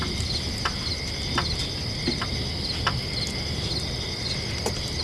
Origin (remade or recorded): recorded